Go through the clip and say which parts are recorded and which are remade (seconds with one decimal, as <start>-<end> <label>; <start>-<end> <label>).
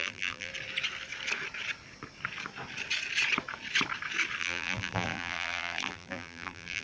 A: 0.0-0.5 remade; 0.5-4.4 recorded; 4.4-6.8 remade